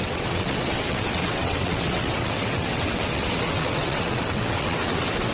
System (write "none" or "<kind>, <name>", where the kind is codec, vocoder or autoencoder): vocoder, WaveNeXt